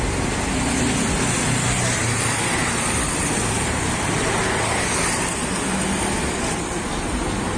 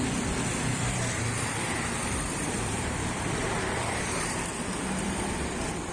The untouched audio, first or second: first